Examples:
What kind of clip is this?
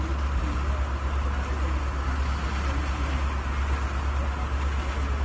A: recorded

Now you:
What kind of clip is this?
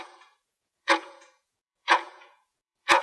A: remade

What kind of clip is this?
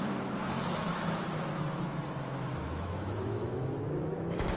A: remade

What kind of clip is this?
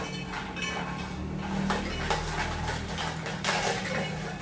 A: recorded